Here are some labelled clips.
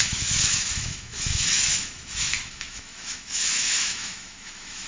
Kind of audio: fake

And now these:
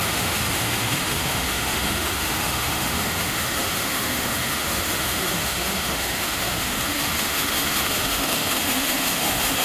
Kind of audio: fake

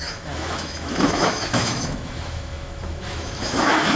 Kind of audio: fake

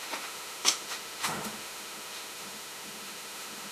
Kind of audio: fake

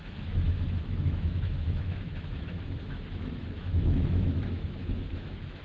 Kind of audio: fake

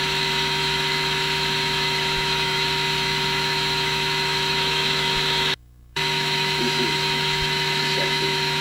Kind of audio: fake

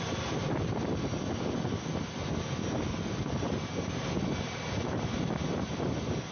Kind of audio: real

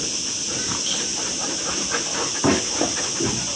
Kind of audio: real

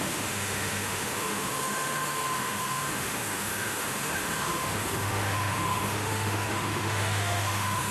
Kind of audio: fake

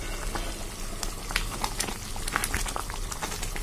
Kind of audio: real